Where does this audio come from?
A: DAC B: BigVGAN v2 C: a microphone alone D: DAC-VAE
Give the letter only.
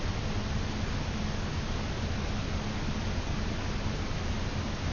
C